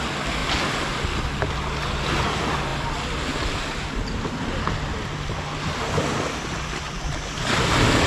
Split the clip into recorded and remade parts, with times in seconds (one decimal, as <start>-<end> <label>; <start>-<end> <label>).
0.0-8.1 recorded